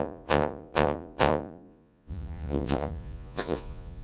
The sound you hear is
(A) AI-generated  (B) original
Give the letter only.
A